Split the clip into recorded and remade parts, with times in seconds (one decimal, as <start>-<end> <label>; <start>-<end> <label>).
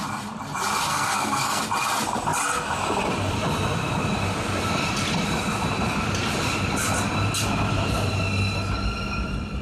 0.0-0.9 recorded; 0.9-1.6 remade; 1.6-9.6 recorded